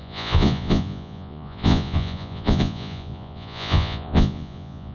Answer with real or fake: fake